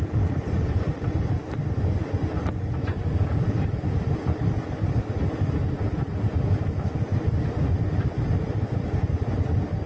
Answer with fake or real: real